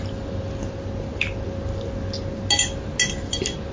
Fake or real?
real